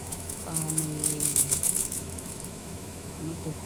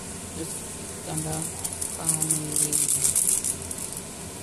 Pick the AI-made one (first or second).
first